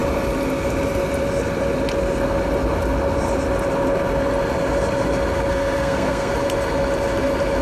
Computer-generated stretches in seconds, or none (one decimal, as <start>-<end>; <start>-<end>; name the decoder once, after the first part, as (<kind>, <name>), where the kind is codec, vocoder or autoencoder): 5.5-6.3 (codec, SNAC)